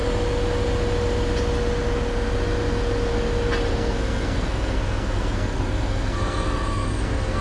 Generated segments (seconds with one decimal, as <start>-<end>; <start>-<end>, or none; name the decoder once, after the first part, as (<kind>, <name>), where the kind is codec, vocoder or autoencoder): 3.7-7.4 (codec, SNAC)